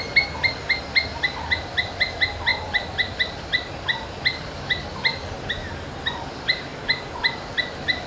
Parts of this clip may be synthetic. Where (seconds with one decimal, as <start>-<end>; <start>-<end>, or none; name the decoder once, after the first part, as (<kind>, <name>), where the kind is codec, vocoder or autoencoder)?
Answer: none